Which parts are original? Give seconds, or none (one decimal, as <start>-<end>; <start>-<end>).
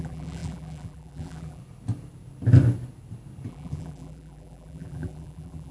1.6-3.5